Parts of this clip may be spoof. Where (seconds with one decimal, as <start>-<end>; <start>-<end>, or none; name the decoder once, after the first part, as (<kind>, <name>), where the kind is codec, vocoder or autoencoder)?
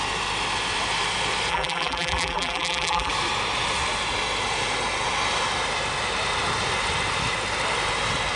1.5-3.1 (vocoder, BigVGAN v2)